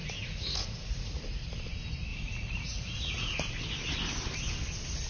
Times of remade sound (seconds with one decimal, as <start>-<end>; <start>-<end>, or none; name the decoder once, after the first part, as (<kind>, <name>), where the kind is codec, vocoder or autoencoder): 0.0-1.5 (vocoder, Vocos); 2.1-3.4